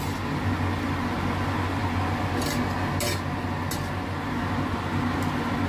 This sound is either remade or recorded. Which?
recorded